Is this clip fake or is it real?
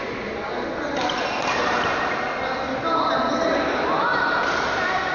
real